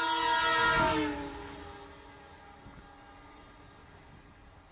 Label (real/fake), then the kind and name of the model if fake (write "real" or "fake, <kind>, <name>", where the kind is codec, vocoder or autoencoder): real